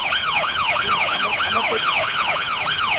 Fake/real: fake